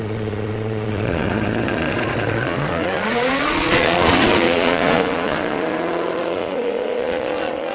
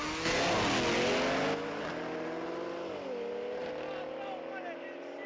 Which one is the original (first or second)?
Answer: second